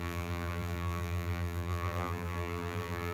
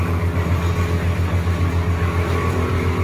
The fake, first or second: first